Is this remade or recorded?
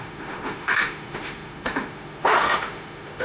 remade